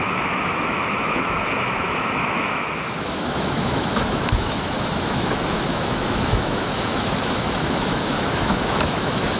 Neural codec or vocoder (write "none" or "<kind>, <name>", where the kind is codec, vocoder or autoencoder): autoencoder, DAC-VAE